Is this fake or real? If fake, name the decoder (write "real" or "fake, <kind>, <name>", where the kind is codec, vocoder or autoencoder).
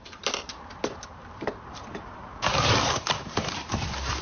fake, vocoder, BigVGAN v2